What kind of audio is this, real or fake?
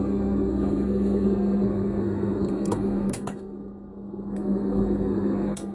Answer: fake